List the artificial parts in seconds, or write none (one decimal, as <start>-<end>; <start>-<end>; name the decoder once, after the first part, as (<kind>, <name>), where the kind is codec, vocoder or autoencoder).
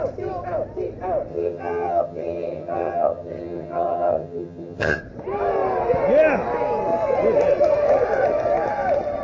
1.3-5.0 (vocoder, HiFi-GAN)